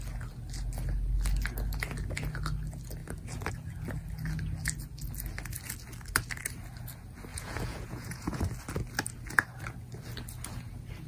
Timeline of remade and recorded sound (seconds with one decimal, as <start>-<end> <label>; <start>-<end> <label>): 0.0-7.3 recorded; 7.3-8.4 remade; 8.4-11.1 recorded